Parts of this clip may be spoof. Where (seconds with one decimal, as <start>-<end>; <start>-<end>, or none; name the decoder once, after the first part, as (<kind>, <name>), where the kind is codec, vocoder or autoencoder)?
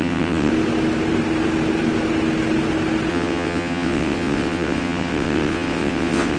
0.0-0.5 (vocoder, WaveNeXt); 3.1-6.4